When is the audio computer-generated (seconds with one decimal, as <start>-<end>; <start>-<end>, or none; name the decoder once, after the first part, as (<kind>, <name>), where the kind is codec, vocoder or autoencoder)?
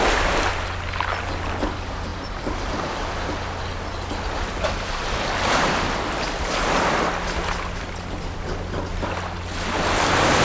none